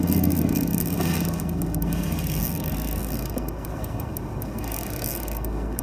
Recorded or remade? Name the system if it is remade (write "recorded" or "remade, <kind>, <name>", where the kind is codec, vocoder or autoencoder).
remade, codec, SNAC